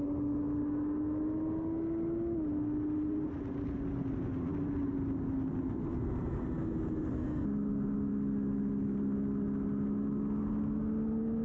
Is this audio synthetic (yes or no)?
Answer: no